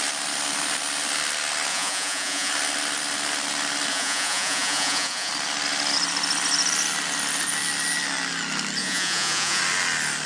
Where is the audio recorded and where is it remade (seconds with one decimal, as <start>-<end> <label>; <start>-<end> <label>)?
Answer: 0.0-1.7 recorded; 1.7-2.5 remade; 2.5-3.9 recorded; 3.9-5.3 remade; 5.3-8.8 recorded; 8.8-9.6 remade; 9.6-10.3 recorded